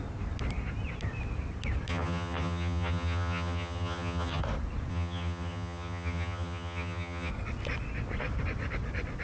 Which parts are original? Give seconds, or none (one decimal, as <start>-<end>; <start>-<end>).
0.0-1.9; 4.4-4.9; 7.3-9.2